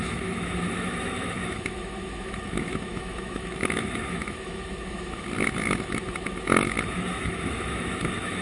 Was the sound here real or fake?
fake